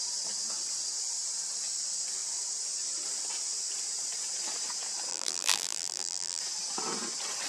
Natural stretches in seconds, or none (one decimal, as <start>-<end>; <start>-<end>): 0.0-5.1; 6.4-7.5